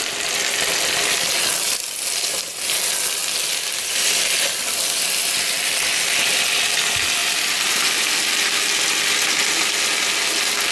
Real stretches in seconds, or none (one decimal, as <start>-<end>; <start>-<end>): 0.0-10.7